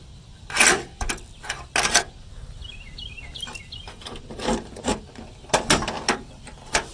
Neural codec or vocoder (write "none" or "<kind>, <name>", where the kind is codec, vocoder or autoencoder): none